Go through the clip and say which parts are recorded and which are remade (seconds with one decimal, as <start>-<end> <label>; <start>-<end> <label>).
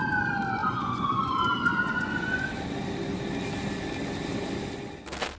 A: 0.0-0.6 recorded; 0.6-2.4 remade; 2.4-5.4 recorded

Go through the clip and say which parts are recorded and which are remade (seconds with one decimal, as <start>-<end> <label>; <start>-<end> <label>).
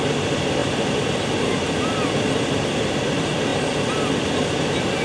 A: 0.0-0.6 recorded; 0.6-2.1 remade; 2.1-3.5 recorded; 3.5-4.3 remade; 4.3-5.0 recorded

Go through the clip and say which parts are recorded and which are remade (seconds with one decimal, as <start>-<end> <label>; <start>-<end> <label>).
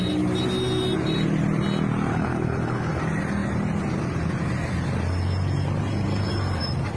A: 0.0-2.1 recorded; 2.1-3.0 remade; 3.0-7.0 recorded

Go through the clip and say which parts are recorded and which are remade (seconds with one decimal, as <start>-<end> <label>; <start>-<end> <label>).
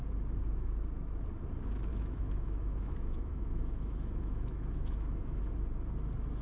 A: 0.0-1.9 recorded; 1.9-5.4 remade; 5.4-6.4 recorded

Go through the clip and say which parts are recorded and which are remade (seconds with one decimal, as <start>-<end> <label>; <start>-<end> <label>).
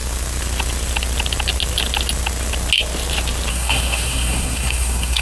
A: 0.0-3.5 recorded; 3.5-5.2 remade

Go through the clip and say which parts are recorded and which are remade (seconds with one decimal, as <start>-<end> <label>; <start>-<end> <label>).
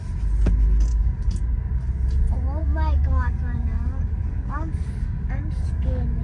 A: 0.0-0.9 recorded; 0.9-1.9 remade; 1.9-2.6 recorded; 2.6-6.2 remade